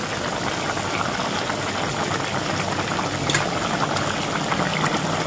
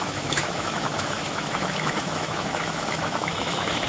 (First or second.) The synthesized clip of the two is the second